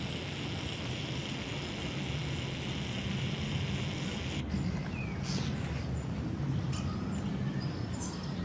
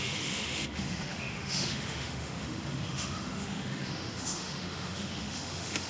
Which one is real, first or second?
first